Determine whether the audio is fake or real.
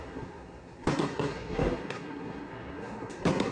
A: fake